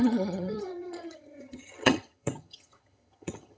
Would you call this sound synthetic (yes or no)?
yes